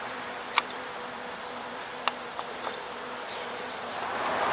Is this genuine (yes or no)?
no